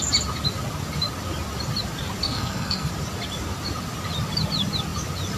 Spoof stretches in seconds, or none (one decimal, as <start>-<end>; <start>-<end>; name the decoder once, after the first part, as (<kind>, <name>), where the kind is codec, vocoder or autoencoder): 2.2-2.9 (codec, SNAC)